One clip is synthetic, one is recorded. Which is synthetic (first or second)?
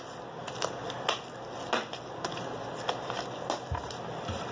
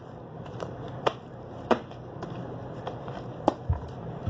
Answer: second